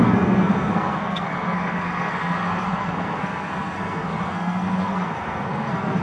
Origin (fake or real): fake